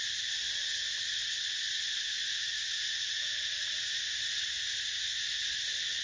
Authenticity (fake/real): real